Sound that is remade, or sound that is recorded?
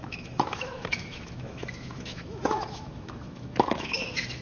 remade